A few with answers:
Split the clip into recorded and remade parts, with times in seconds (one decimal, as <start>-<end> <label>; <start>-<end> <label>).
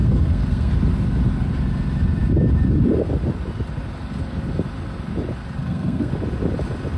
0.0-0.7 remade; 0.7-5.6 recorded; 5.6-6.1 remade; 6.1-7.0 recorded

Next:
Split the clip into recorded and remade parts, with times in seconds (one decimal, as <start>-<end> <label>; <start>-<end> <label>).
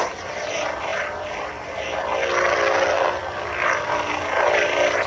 0.0-5.1 recorded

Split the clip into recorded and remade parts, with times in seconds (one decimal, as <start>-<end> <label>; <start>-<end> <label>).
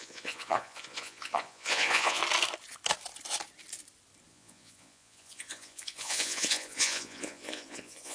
0.0-2.2 remade; 2.2-4.3 recorded; 4.3-8.1 remade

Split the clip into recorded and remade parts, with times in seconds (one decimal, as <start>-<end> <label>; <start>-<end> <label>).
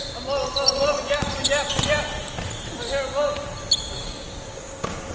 0.0-4.0 recorded; 4.0-5.1 remade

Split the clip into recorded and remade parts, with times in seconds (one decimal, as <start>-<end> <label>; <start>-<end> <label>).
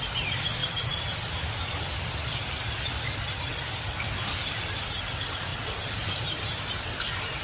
0.0-5.5 remade; 5.5-6.8 recorded; 6.8-7.4 remade